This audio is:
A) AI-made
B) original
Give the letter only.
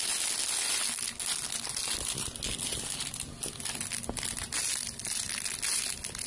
B